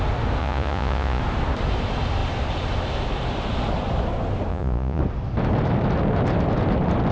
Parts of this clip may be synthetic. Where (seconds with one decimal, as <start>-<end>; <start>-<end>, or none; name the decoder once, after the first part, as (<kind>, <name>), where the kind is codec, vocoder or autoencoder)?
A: 0.4-1.2 (vocoder, Vocos); 4.5-5.0